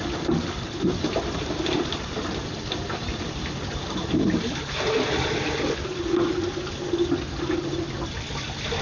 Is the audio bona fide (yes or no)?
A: yes